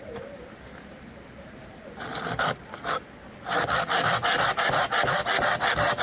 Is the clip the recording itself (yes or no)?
yes